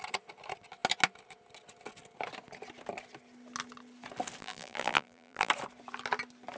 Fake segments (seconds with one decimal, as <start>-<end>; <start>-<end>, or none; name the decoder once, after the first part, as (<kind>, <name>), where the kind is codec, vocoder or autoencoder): 4.4-5.5 (vocoder, BigVGAN v2)